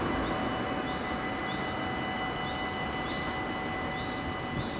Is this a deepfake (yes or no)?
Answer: no